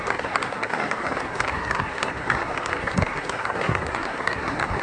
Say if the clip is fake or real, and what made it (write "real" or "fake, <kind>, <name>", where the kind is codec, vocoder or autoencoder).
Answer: fake, codec, SNAC